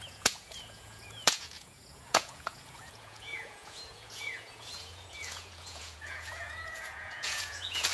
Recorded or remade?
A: remade